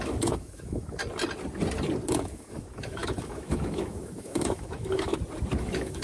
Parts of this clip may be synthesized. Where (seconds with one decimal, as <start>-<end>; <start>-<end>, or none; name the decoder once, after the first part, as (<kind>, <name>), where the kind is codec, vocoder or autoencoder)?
0.0-1.0 (autoencoder, DAC-VAE); 2.1-5.1; 5.6-6.0